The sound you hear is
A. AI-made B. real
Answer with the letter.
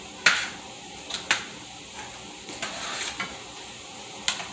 B